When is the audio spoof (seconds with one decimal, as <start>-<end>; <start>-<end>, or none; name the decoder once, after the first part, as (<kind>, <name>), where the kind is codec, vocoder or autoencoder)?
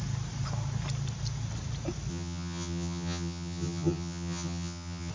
2.1-5.1 (vocoder, HiFi-GAN)